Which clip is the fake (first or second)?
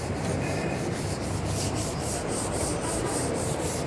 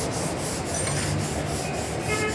first